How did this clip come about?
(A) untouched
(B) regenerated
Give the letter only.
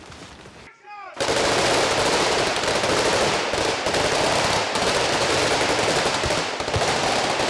A